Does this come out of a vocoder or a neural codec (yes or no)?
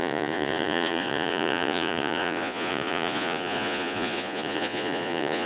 yes